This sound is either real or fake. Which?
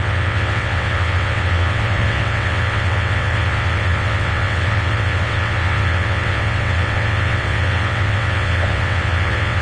fake